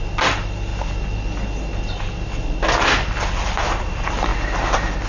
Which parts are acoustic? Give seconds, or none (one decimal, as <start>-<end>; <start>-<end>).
0.0-5.1